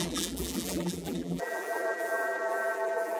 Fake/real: fake